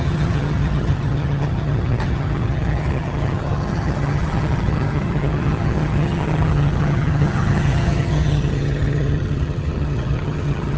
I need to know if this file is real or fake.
fake